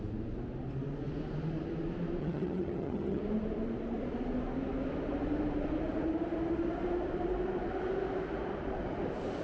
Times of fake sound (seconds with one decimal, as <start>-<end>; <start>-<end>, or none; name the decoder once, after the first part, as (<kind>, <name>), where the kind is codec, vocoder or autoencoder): 2.2-3.2 (vocoder, HiFi-GAN)